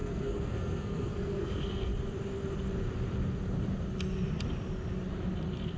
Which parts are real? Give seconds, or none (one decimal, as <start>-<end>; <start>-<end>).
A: 1.9-5.8

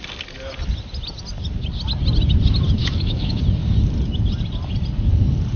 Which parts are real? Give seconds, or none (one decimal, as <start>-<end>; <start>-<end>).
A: 0.0-2.8; 3.4-5.6

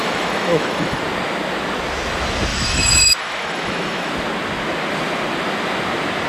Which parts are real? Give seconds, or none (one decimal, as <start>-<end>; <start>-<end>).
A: 1.0-2.5; 4.1-6.3

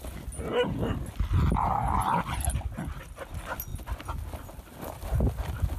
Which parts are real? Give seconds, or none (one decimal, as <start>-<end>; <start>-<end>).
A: 0.0-5.8

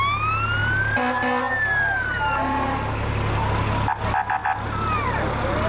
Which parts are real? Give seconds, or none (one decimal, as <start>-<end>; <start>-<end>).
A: 0.0-5.7

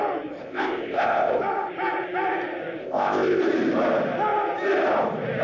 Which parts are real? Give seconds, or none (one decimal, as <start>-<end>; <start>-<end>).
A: 0.0-0.4; 1.4-2.8; 3.4-5.4

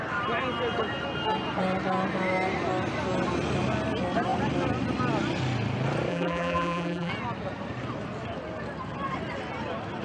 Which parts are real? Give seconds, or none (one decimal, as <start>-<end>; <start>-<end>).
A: 0.0-6.1; 7.1-10.0